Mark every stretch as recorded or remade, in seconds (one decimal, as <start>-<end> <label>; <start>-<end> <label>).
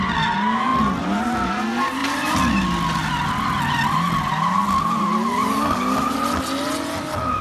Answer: 0.0-7.4 recorded